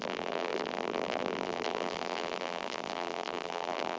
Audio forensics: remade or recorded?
remade